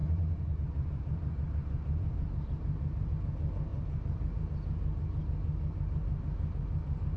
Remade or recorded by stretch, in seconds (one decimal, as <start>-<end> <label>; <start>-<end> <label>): 0.0-3.1 remade; 3.1-3.7 recorded; 3.7-4.4 remade; 4.4-7.2 recorded